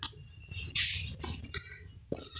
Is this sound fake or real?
real